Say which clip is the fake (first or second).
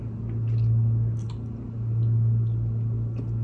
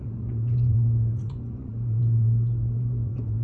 second